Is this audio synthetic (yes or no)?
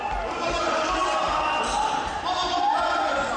no